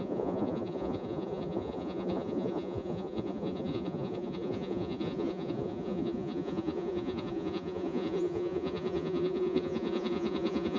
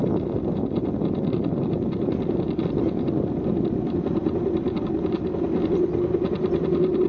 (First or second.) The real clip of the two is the second